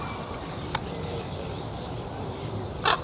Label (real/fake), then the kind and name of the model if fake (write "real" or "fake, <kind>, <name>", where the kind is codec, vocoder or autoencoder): real